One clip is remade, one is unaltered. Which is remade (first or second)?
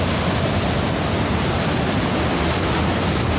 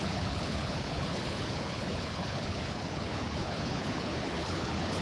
second